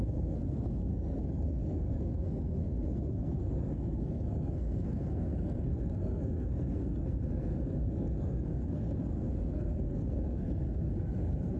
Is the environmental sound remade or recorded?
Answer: remade